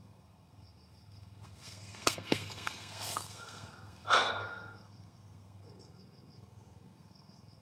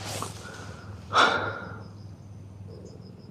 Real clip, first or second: second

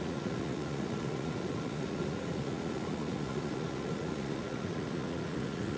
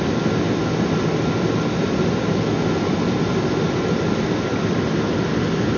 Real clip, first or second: second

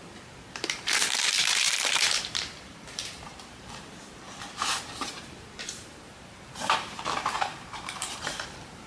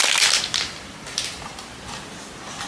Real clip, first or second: second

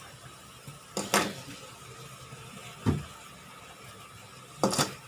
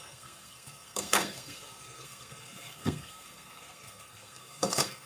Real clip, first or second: first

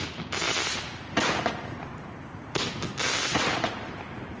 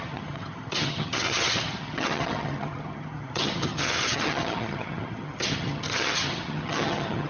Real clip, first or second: first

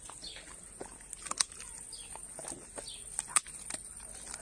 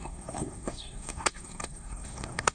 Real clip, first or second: first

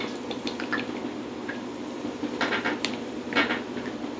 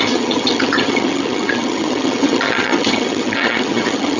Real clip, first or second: first